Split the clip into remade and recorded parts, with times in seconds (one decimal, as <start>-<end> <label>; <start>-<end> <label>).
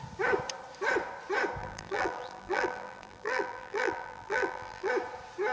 0.0-1.6 recorded; 1.6-4.9 remade; 4.9-5.5 recorded